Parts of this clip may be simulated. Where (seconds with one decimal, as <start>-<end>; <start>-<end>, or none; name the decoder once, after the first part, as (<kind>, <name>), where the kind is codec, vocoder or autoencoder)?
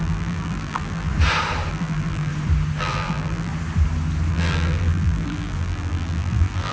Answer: 0.0-1.1 (vocoder, BigVGAN v2); 1.7-2.3; 2.8-3.5; 4.3-6.7